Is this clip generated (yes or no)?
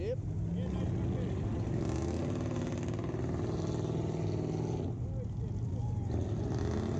no